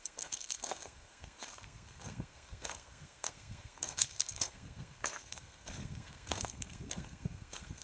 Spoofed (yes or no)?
yes